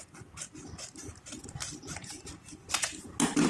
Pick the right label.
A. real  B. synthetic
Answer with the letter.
A